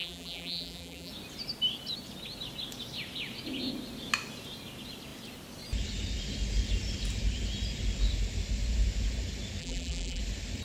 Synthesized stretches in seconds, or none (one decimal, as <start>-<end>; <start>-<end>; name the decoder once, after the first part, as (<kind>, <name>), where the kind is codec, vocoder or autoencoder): 0.0-1.1 (vocoder, BigVGAN v2); 9.6-10.2

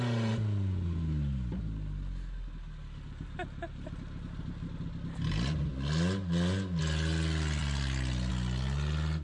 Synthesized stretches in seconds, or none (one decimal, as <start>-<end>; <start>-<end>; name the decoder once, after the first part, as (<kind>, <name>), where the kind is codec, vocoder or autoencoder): 7.6-8.3 (vocoder, BigVGAN v2)